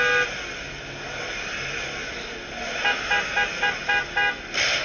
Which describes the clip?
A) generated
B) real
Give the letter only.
B